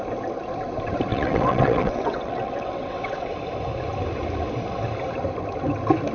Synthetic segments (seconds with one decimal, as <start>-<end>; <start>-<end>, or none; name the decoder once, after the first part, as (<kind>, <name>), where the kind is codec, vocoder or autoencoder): 1.1-3.3 (vocoder, WaveNeXt)